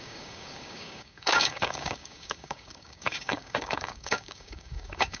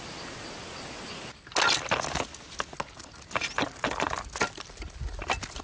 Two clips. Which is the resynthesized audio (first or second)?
first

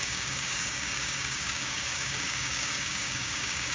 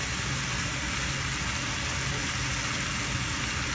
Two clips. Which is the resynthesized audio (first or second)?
first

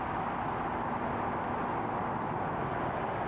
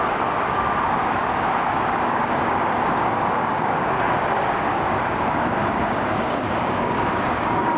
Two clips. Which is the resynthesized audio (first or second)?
second